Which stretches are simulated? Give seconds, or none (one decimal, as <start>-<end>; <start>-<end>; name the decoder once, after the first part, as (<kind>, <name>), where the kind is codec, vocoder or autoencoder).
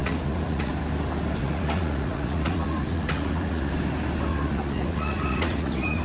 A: 0.0-0.7 (vocoder, Vocos); 1.4-3.7; 4.3-6.0